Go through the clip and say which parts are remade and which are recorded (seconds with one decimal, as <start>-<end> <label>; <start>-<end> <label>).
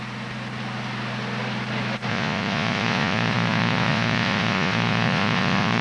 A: 0.0-2.1 recorded; 2.1-5.8 remade